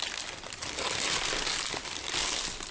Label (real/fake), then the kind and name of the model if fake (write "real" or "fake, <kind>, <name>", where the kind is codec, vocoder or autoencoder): real